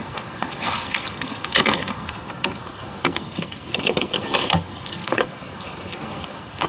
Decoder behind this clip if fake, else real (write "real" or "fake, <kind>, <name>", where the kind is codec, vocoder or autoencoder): fake, codec, SNAC